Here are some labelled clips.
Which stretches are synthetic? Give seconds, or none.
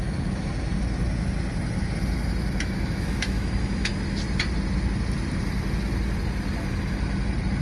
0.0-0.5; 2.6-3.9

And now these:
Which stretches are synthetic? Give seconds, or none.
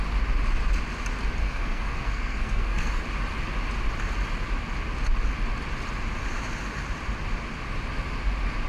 1.4-3.0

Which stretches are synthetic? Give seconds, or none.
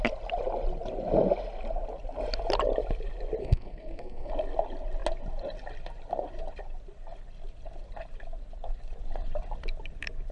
3.4-4.3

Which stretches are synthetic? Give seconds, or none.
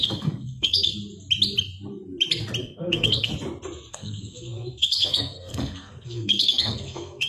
0.0-0.9; 2.6-3.3; 3.9-7.3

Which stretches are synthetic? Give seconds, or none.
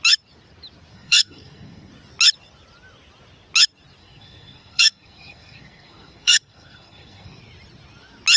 0.9-1.9; 4.0-7.4